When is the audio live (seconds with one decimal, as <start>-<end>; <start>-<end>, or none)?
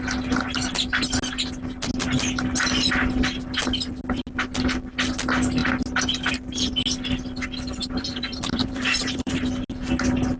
0.0-7.8; 9.4-10.4